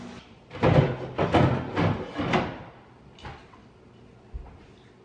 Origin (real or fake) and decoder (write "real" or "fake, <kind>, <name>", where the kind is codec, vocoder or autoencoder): real